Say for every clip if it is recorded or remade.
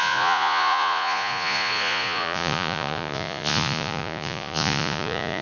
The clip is remade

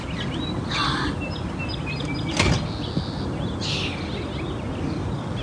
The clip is recorded